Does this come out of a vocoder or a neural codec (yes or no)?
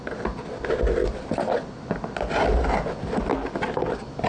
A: no